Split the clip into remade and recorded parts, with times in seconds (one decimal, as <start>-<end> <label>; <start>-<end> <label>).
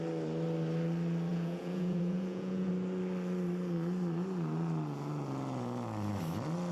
0.0-1.3 recorded; 1.3-2.7 remade; 2.7-6.7 recorded